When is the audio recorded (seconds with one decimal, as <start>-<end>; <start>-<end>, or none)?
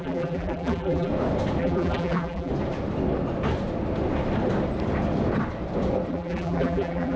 1.1-1.6; 2.5-6.1